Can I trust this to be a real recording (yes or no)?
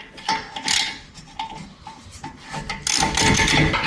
yes